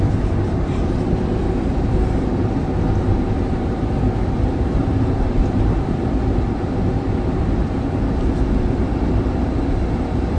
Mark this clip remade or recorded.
remade